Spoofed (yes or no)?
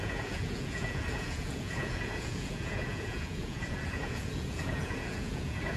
yes